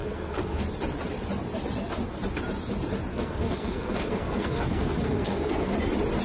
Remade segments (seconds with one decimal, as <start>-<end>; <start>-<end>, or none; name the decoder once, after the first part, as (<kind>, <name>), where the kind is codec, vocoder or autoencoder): 0.0-0.6 (codec, SNAC); 3.1-5.7